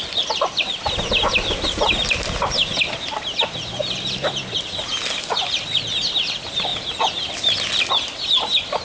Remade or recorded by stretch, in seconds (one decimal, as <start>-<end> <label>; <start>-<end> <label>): 0.0-8.8 recorded